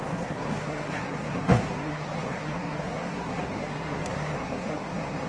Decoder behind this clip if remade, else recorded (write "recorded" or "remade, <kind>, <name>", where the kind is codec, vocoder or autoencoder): remade, codec, SNAC